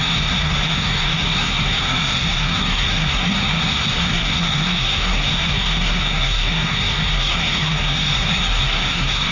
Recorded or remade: remade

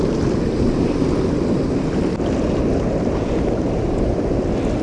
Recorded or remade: recorded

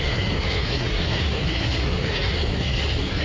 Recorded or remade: remade